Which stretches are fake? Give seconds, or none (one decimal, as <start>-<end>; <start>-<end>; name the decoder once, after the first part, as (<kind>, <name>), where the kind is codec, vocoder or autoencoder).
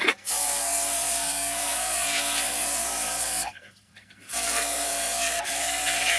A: 0.0-6.2 (codec, SNAC)